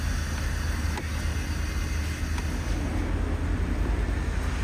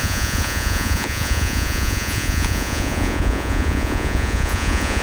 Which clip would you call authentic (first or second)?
first